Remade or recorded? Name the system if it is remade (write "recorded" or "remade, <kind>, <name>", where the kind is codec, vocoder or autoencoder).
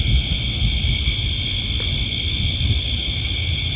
recorded